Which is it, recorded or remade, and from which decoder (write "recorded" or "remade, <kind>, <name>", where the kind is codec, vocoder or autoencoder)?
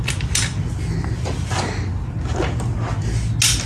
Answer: recorded